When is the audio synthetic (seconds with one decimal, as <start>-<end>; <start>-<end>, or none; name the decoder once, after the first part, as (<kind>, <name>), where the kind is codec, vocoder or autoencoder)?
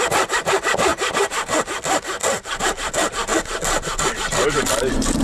none